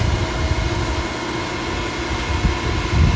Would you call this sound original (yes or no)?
yes